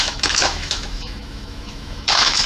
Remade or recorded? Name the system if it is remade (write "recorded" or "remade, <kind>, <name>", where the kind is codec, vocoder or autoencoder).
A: remade, autoencoder, DAC-VAE